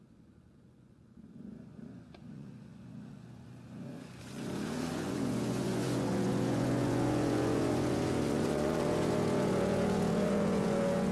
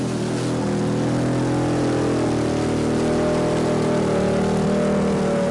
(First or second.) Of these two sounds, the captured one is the second